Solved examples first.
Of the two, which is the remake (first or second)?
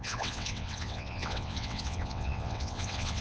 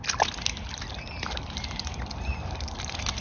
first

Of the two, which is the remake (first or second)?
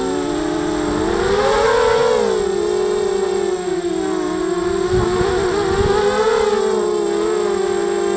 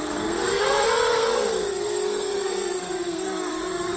second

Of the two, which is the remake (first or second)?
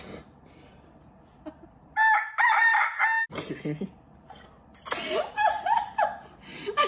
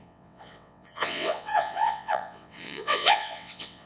second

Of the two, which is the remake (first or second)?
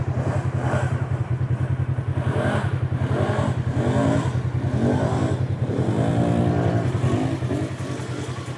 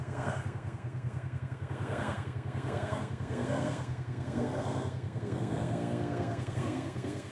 second